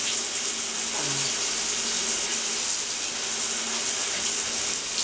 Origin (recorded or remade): recorded